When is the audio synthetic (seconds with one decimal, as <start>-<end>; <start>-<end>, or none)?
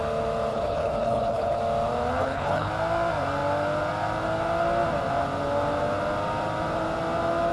0.5-1.6; 2.2-2.7